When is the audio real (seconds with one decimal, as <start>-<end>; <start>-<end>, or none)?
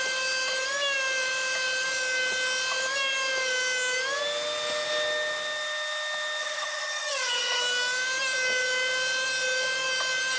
0.0-6.4; 7.6-10.4